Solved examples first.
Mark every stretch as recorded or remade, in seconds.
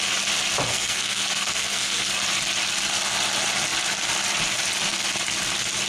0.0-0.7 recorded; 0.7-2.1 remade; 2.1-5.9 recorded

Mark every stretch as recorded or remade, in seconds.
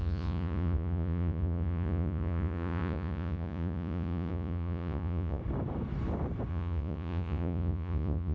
0.0-5.4 remade; 5.4-6.5 recorded; 6.5-8.3 remade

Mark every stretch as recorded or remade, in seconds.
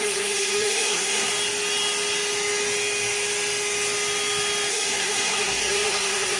0.0-1.3 remade; 1.3-4.7 recorded; 4.7-6.4 remade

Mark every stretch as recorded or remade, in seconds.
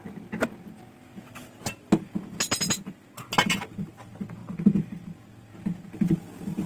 0.0-6.7 recorded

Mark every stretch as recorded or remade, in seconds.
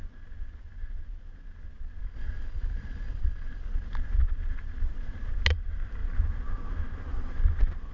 0.0-2.0 recorded; 2.0-3.6 remade; 3.6-7.9 recorded